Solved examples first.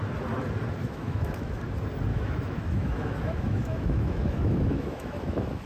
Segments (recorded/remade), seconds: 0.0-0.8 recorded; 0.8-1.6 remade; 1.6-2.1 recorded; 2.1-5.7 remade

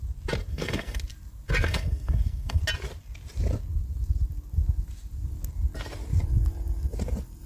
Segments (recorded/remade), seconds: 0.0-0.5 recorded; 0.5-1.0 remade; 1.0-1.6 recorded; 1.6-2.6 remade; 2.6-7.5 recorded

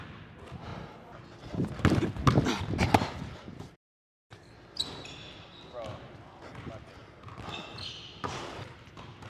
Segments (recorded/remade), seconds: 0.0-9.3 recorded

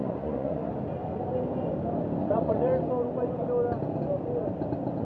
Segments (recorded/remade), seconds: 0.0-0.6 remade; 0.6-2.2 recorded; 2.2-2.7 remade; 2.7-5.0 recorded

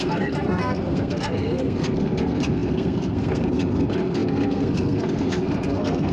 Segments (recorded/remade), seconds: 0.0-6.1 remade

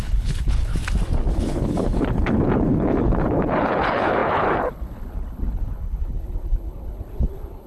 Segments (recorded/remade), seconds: 0.0-0.7 remade; 0.7-1.3 recorded; 1.3-7.7 remade